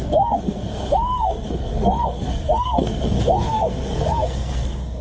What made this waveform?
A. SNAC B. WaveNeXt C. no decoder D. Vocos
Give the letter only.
A